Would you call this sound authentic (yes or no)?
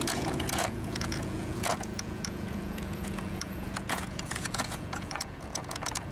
no